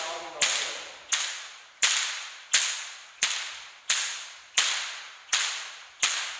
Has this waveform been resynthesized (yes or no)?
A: no